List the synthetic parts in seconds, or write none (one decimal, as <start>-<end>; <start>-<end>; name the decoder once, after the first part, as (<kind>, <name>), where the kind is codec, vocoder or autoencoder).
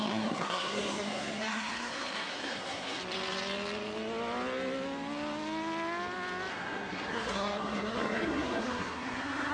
0.0-3.0 (codec, SNAC); 6.5-9.5